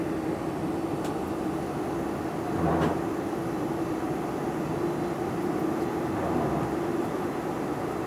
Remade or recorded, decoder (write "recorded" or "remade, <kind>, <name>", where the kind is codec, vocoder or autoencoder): recorded